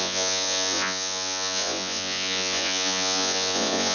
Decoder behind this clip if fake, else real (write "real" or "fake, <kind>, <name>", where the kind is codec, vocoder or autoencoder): fake, vocoder, Vocos